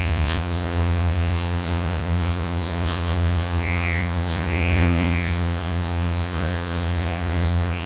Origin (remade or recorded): remade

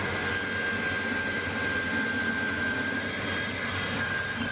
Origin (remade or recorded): recorded